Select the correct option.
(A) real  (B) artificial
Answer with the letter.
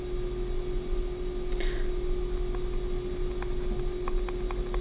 A